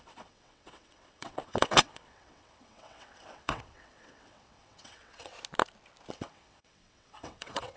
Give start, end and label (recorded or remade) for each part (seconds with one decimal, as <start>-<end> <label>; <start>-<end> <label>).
0.0-5.3 remade; 5.3-6.1 recorded; 6.1-7.8 remade